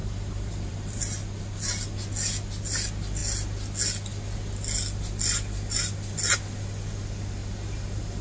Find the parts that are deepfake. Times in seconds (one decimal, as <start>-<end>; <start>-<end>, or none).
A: 0.0-1.0; 7.4-8.2